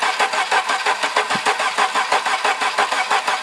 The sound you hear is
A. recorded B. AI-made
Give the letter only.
B